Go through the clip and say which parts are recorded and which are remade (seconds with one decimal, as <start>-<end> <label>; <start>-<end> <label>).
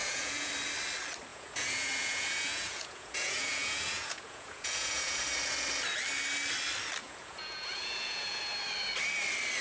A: 0.0-0.5 remade; 0.5-1.3 recorded; 1.3-5.2 remade; 5.2-7.0 recorded; 7.0-8.4 remade; 8.4-9.6 recorded